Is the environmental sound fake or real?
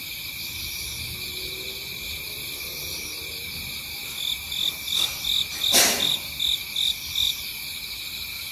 fake